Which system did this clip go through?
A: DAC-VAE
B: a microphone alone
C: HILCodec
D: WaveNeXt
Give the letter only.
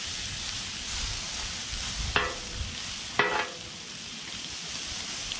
B